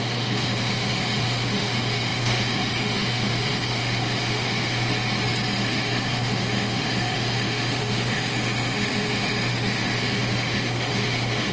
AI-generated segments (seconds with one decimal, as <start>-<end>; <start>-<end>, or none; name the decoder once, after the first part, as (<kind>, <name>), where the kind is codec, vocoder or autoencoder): 0.0-4.9 (autoencoder, DAC-VAE); 5.6-11.5